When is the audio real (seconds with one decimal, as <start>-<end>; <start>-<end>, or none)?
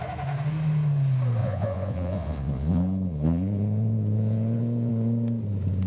0.0-1.4; 4.9-5.9